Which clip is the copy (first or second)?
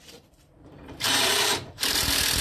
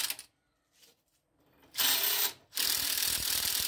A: first